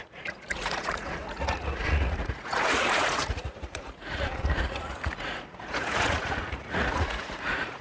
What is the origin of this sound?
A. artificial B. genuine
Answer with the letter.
A